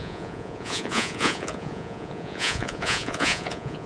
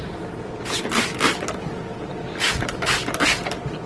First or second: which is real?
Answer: second